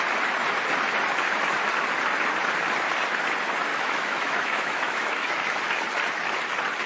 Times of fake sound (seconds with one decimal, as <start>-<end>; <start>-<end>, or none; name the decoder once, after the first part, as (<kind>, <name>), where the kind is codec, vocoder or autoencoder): 3.7-5.3 (autoencoder, DAC-VAE)